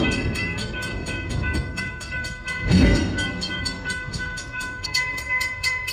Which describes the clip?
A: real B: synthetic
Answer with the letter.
B